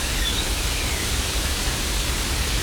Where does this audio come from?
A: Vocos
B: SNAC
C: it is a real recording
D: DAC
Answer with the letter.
D